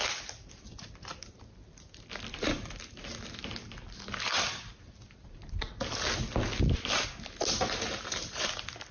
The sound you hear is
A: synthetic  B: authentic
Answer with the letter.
B